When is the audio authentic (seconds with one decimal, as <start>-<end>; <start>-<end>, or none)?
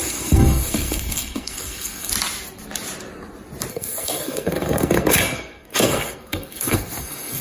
2.1-3.7